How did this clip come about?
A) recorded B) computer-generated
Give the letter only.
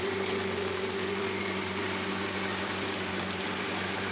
A